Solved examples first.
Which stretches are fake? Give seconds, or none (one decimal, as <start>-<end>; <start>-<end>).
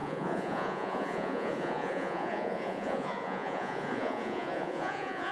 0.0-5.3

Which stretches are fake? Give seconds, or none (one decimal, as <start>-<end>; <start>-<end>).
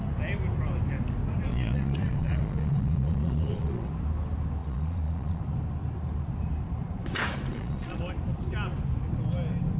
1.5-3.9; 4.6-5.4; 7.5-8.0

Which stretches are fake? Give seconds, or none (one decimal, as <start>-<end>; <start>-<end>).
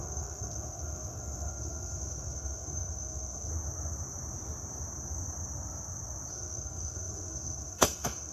0.0-3.5; 6.3-8.3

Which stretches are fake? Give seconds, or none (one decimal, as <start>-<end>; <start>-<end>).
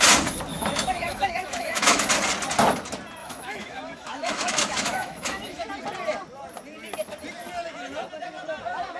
0.5-2.1; 3.2-5.7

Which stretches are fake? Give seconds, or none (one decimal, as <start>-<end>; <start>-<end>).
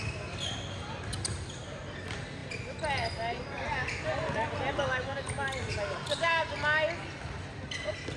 none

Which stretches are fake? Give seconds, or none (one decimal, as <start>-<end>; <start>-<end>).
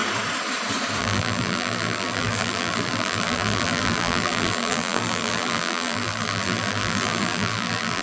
1.0-8.0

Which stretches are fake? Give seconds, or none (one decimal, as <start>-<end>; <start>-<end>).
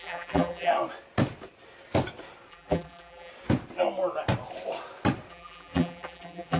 0.0-0.7; 2.5-3.3; 5.3-6.6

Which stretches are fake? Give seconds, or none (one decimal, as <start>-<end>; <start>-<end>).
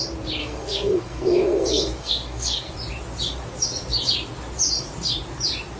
0.4-2.7